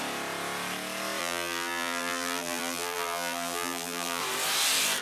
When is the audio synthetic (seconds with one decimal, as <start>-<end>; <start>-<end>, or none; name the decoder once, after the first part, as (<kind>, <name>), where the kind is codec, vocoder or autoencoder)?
1.2-4.2 (vocoder, BigVGAN v2)